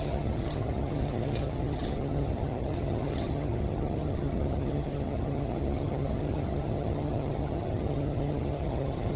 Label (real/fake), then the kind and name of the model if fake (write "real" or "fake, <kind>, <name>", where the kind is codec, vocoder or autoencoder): fake, vocoder, HiFi-GAN